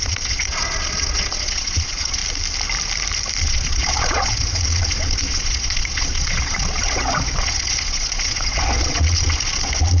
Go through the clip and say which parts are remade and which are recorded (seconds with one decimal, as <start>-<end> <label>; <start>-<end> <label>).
0.0-2.2 remade; 2.2-3.4 recorded; 3.4-10.0 remade